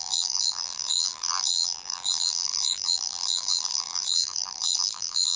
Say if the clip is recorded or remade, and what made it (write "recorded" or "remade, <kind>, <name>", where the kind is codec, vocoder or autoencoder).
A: remade, vocoder, BigVGAN v2